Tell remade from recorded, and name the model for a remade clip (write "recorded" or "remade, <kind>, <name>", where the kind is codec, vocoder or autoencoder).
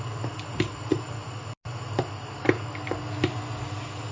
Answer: recorded